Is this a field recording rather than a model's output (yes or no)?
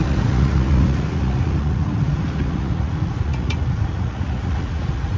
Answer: no